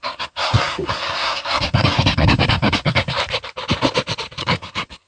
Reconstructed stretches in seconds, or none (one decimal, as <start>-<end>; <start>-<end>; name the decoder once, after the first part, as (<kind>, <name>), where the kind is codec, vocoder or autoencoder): 0.0-3.1 (codec, SNAC); 4.4-5.1